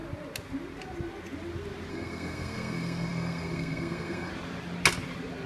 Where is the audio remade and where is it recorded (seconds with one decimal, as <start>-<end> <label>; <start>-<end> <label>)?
0.0-1.9 recorded; 1.9-4.3 remade; 4.3-5.5 recorded